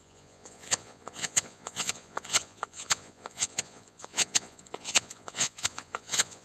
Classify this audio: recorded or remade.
remade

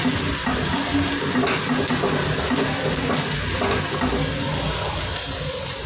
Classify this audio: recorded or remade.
recorded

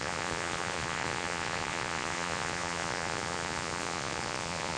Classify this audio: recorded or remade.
remade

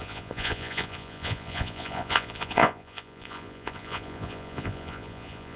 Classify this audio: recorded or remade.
remade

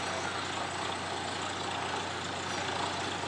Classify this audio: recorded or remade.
recorded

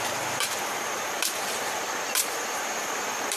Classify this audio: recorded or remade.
remade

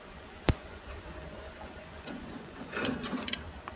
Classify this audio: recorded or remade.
remade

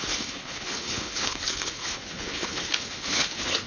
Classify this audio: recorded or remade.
remade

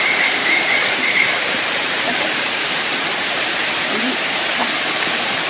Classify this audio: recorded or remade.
remade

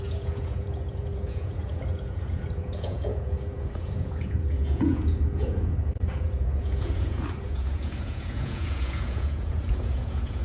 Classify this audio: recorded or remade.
remade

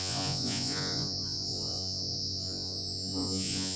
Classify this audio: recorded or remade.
remade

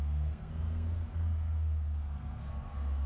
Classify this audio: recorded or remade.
remade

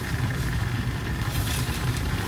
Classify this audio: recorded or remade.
remade